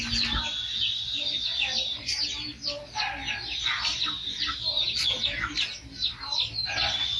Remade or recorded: recorded